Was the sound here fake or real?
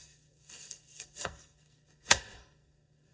fake